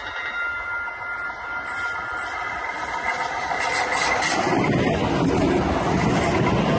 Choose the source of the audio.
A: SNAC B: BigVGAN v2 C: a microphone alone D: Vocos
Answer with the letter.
C